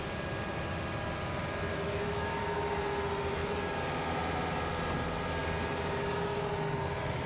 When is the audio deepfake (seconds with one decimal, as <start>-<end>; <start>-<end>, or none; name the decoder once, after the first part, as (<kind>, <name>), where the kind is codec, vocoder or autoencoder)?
1.7-2.8 (autoencoder, DAC-VAE)